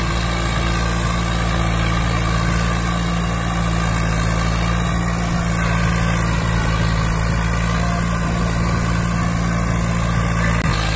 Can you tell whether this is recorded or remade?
recorded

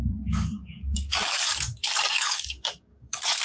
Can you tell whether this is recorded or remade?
remade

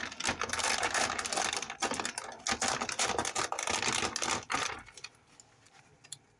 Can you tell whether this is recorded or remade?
recorded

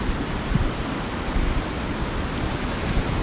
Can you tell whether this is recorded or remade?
recorded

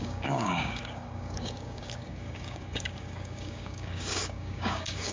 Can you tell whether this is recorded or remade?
remade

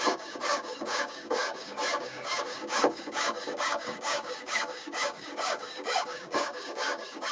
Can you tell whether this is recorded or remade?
remade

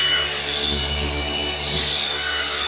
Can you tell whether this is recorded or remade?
remade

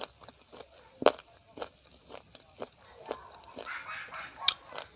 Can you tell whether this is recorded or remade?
recorded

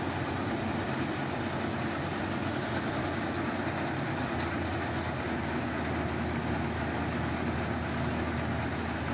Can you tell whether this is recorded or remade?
recorded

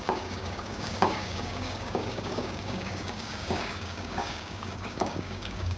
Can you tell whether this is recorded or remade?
remade